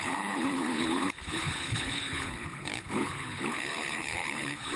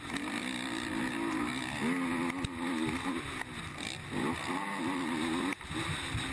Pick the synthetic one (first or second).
first